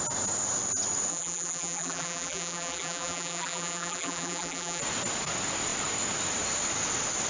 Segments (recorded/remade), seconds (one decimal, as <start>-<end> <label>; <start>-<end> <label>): 0.0-1.1 recorded; 1.1-4.8 remade; 4.8-7.3 recorded

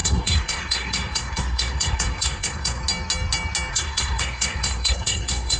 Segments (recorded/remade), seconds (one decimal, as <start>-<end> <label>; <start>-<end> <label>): 0.0-2.8 remade; 2.8-3.7 recorded; 3.7-5.6 remade

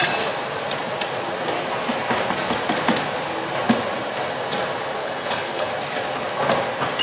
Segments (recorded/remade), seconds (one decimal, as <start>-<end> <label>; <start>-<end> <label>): 0.0-5.0 recorded; 5.0-5.7 remade; 5.7-7.0 recorded